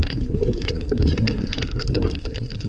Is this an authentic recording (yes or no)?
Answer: no